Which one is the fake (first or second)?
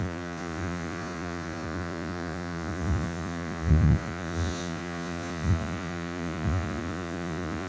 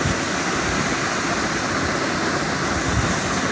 first